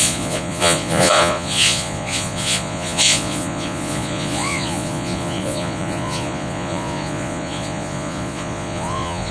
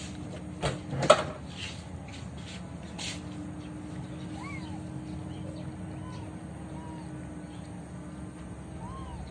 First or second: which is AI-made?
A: first